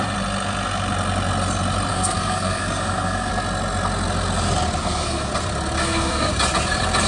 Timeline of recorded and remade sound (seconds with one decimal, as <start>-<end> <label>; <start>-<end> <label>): 0.0-1.9 recorded; 1.9-3.3 remade; 3.3-4.8 recorded; 4.8-5.3 remade; 5.3-5.8 recorded; 5.8-6.3 remade; 6.3-7.1 recorded